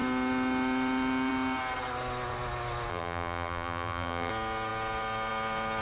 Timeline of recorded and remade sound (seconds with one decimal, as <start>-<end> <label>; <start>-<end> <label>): 0.0-2.9 recorded; 2.9-4.3 remade; 4.3-5.8 recorded